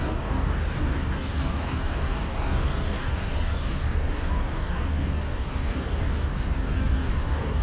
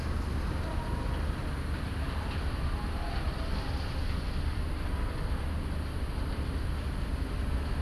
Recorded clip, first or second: second